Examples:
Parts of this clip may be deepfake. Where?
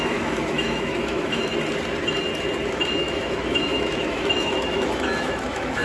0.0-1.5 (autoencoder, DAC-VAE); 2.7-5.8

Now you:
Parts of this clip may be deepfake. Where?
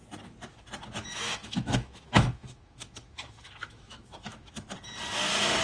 1.1-4.5 (autoencoder, DAC-VAE)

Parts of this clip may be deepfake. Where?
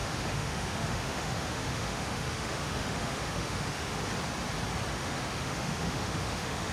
0.0-4.0 (autoencoder, DAC-VAE); 4.9-6.7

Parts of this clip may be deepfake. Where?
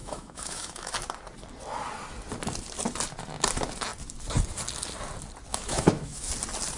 0.0-0.9 (autoencoder, DAC-VAE); 5.5-6.3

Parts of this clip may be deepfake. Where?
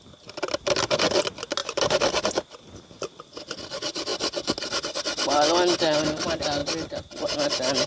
none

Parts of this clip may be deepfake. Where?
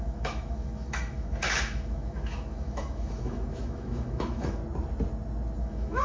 0.0-4.6 (autoencoder, DAC-VAE); 5.6-6.0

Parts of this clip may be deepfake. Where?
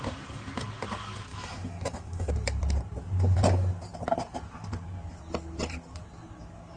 1.3-2.3 (autoencoder, DAC-VAE)